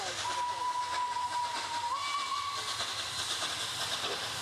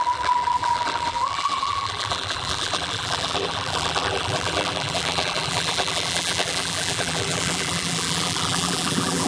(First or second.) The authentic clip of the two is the first